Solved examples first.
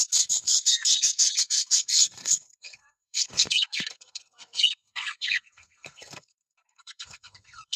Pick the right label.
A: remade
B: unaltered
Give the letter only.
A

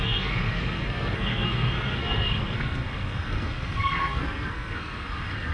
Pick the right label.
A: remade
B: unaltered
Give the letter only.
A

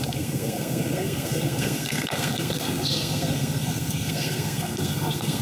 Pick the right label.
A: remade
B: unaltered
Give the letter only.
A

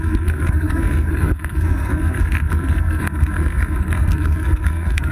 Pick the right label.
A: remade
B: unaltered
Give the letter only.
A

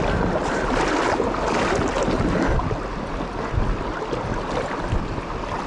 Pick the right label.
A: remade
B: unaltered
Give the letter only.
B